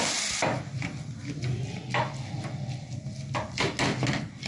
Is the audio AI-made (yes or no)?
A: no